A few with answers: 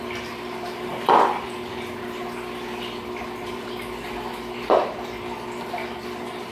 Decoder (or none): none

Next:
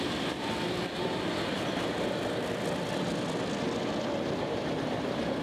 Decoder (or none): vocoder, BigVGAN v2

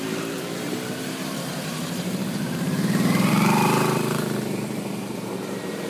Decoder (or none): vocoder, BigVGAN v2